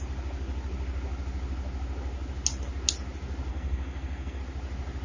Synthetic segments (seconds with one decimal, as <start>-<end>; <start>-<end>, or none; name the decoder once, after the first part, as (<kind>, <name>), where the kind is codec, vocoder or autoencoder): 3.5-4.4 (codec, SNAC)